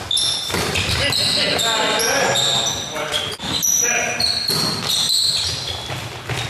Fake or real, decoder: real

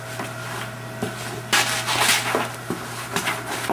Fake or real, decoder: real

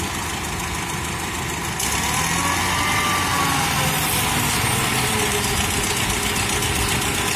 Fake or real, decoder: real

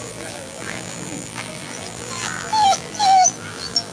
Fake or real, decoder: fake, vocoder, BigVGAN v2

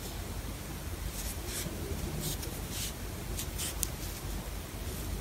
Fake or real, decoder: real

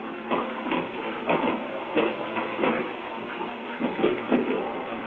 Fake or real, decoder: fake, codec, SNAC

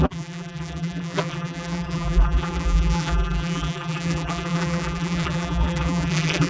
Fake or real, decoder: fake, vocoder, BigVGAN v2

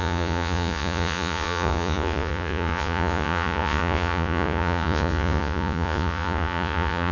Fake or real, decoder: fake, vocoder, Vocos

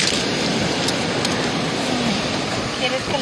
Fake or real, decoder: fake, vocoder, BigVGAN v2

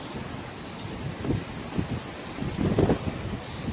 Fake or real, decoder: real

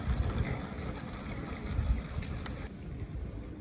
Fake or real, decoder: real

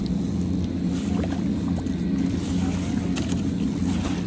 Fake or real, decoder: real